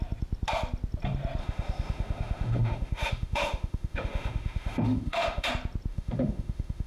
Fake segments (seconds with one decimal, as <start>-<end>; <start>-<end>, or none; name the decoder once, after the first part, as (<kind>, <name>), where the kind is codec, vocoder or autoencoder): 1.4-5.5 (autoencoder, DAC-VAE); 5.9-6.9